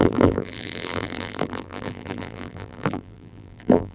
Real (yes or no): no